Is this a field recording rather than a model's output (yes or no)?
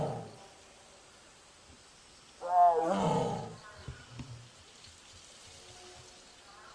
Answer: yes